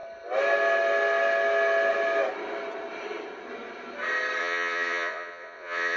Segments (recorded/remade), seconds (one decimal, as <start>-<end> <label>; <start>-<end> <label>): 0.0-4.4 recorded; 4.4-6.0 remade